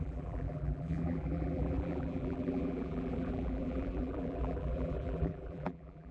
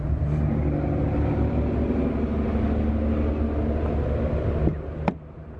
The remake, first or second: first